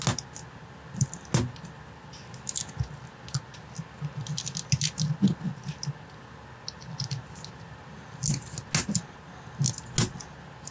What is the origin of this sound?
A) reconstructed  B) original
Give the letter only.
B